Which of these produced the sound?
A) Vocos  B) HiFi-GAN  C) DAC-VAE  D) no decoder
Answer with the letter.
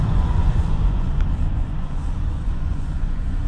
A